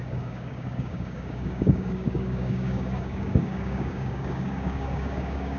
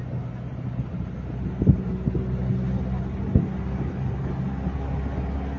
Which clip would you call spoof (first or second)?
first